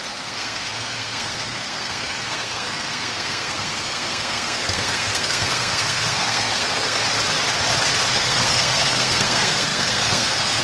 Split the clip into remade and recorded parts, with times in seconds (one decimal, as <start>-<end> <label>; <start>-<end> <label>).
0.0-7.0 remade; 7.0-8.1 recorded; 8.1-10.6 remade